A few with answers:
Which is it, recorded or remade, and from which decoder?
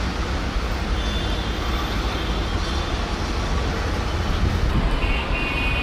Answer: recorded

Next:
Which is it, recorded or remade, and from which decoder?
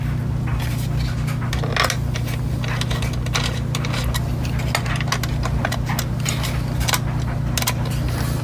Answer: recorded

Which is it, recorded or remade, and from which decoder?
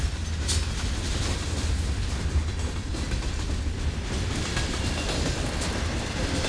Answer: recorded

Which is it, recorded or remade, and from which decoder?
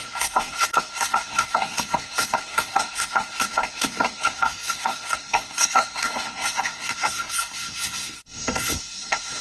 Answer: remade, codec, SNAC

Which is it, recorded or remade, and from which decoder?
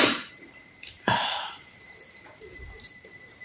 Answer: remade, vocoder, BigVGAN v2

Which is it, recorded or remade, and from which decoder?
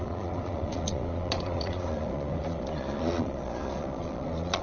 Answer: remade, vocoder, Vocos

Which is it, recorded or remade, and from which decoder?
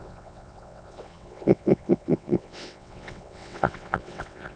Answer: remade, vocoder, WaveNeXt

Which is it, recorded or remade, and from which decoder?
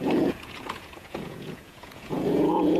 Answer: remade, vocoder, Vocos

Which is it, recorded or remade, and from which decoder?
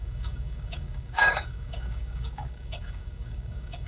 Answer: remade, codec, DAC